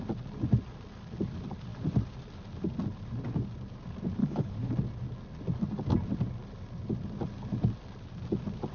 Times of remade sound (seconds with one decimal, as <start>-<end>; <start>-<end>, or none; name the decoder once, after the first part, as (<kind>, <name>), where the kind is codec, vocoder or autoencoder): 4.2-4.7 (codec, HILCodec)